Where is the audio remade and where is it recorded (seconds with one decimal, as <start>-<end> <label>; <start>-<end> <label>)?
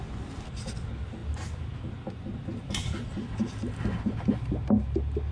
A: 0.0-5.3 recorded